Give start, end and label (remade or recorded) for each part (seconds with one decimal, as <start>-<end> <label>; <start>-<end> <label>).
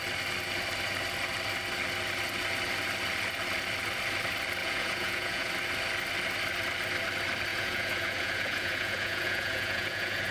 0.0-4.6 recorded; 4.6-5.5 remade; 5.5-7.5 recorded; 7.5-10.3 remade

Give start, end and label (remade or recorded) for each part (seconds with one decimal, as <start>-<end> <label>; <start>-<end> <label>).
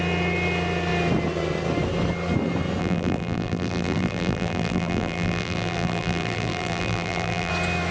0.0-2.8 recorded; 2.8-7.5 remade; 7.5-7.9 recorded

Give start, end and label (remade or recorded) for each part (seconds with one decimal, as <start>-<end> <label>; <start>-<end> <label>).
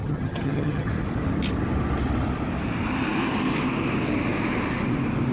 0.0-0.9 remade; 0.9-5.3 recorded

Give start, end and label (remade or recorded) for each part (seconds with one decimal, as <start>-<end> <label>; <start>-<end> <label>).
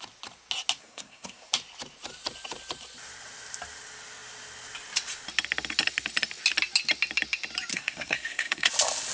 0.0-0.8 recorded; 0.8-1.5 remade; 1.5-7.7 recorded; 7.7-8.7 remade; 8.7-9.1 recorded